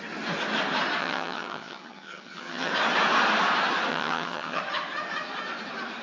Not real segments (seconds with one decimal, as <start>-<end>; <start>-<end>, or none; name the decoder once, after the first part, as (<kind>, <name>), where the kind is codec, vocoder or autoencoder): 1.0-2.7 (vocoder, HiFi-GAN); 3.9-4.6